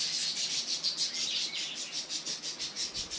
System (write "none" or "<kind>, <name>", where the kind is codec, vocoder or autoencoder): none